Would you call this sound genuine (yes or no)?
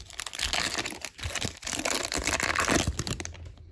yes